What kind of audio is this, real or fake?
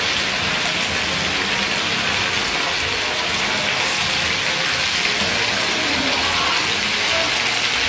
real